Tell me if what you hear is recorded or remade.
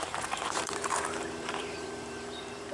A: remade